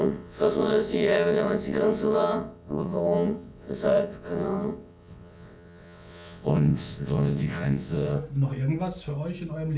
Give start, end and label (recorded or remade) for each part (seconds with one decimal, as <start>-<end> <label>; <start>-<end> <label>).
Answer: 0.0-8.2 remade; 8.2-9.8 recorded